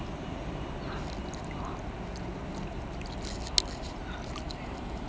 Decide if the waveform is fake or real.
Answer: real